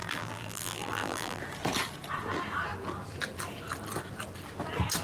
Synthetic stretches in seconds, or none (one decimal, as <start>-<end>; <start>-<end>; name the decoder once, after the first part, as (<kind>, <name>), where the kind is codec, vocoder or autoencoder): 0.0-1.4 (vocoder, BigVGAN v2)

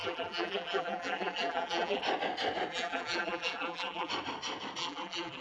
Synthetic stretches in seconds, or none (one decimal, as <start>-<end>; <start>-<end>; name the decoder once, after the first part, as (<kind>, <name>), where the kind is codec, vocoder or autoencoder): 0.0-2.0 (vocoder, BigVGAN v2); 2.7-4.1; 4.8-5.4